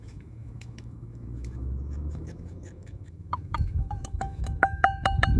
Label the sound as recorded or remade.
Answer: remade